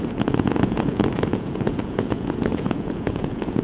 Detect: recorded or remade remade